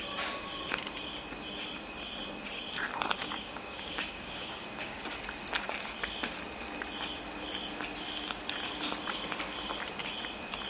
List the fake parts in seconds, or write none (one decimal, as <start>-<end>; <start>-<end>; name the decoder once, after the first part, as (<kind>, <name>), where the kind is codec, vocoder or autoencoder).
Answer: 3.2-5.0 (codec, DAC)